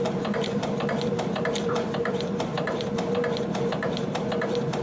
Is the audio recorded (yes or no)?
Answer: no